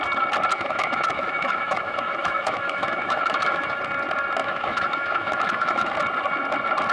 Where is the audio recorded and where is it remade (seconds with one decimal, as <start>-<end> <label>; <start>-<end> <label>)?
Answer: 0.0-0.5 recorded; 0.5-3.8 remade; 3.8-4.4 recorded; 4.4-5.9 remade; 5.9-6.9 recorded